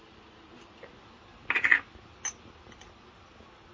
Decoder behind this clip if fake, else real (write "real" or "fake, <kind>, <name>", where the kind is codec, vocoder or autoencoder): real